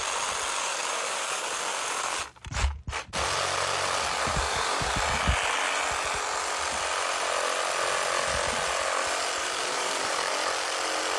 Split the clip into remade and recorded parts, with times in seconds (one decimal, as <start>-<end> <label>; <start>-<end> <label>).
0.0-0.6 recorded; 0.6-2.2 remade; 2.2-4.3 recorded; 4.3-4.9 remade; 4.9-9.4 recorded; 9.4-10.3 remade; 10.3-11.2 recorded